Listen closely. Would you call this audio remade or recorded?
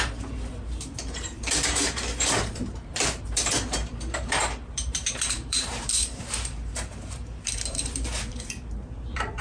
remade